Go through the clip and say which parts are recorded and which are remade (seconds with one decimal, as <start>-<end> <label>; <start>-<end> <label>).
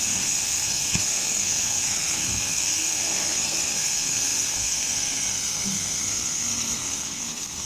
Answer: 0.0-7.7 remade